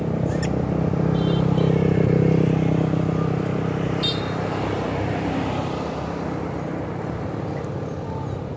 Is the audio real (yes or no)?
yes